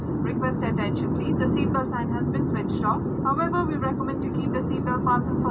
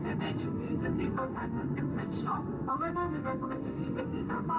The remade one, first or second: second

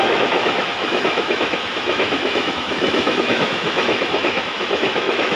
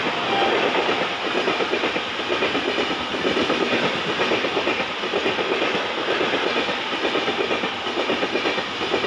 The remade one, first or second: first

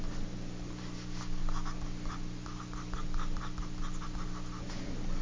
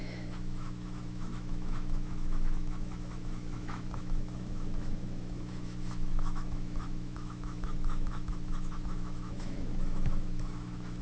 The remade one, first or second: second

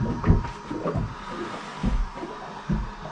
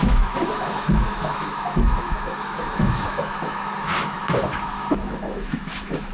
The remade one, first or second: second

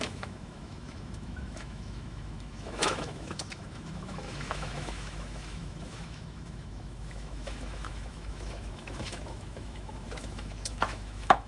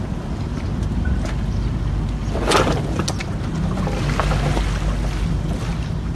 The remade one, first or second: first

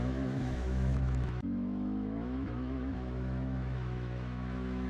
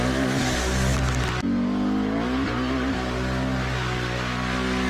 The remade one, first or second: first